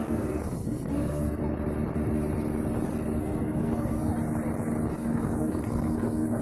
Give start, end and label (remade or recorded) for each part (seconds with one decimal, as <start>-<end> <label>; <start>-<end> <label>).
0.0-1.4 remade; 1.4-3.2 recorded; 3.2-4.1 remade; 4.1-4.9 recorded; 4.9-6.4 remade